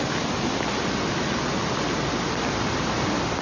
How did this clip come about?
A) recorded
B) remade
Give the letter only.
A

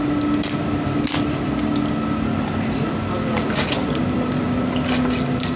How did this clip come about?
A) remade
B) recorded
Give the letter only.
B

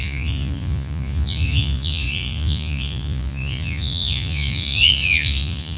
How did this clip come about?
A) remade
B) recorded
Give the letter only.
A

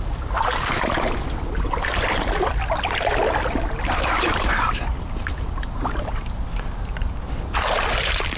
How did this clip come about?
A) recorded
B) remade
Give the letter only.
A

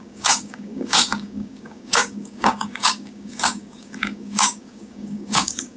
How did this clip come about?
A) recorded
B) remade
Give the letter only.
B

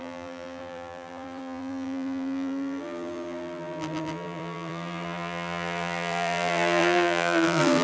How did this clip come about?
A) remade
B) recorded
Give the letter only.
A